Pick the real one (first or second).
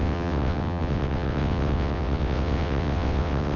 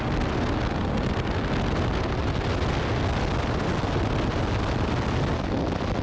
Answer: second